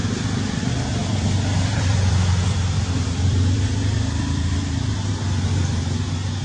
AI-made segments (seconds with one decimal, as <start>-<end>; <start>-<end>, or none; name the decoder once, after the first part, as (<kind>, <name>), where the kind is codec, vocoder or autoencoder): 0.0-0.6 (vocoder, BigVGAN v2); 1.0-4.8